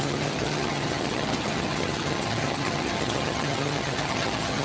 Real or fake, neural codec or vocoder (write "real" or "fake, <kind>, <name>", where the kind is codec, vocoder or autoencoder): fake, vocoder, HiFi-GAN